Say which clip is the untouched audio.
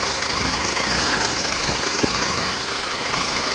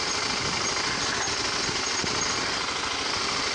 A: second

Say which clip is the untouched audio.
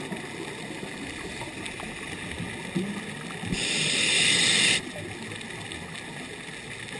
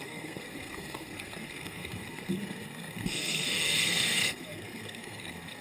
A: first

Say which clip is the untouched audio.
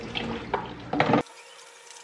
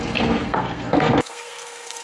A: first